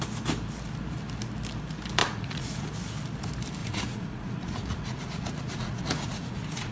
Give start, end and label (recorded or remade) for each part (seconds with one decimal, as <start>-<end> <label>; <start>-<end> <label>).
0.0-2.0 recorded; 2.0-2.6 remade; 2.6-3.6 recorded; 3.6-6.7 remade